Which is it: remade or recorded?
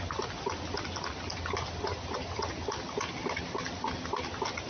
recorded